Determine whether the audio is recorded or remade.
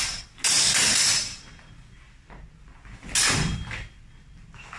recorded